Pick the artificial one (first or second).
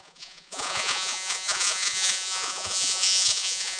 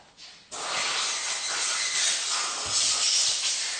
first